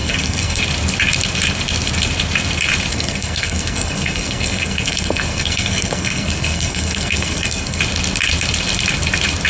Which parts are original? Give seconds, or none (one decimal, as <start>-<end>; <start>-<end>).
0.6-2.9; 7.8-9.5